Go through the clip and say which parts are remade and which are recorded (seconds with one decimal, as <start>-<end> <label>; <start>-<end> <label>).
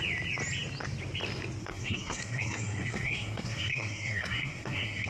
0.0-1.6 recorded; 1.6-5.1 remade